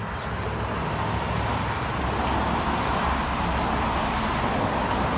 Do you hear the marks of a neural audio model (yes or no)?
no